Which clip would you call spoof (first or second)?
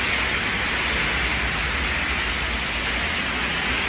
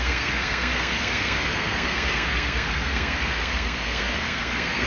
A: second